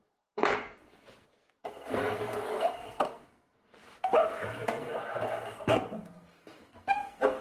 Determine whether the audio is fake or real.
fake